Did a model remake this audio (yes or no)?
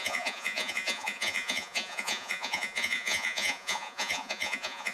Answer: yes